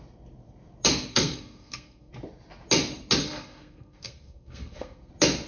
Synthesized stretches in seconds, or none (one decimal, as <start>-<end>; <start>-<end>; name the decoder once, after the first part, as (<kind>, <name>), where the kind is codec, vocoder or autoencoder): 1.1-2.1 (codec, SNAC); 3.2-5.1